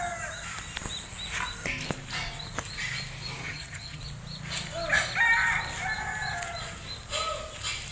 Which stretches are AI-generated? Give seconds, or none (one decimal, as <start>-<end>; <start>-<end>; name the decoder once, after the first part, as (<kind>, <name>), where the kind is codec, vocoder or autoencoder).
3.4-4.0 (vocoder, HiFi-GAN)